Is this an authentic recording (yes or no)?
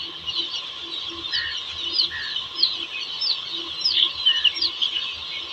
yes